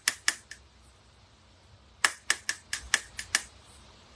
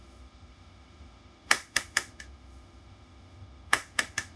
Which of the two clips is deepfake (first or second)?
second